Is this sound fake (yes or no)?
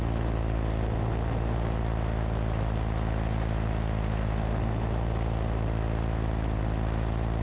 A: no